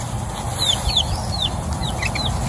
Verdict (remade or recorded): recorded